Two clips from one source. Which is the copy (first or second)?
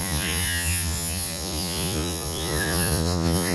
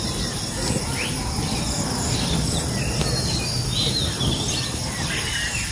first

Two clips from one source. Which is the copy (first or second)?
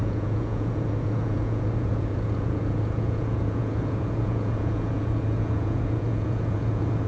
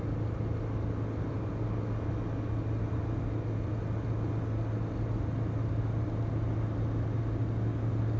first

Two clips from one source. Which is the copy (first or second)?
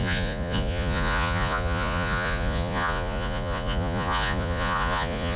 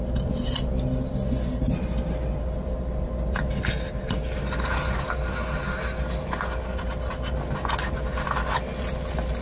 first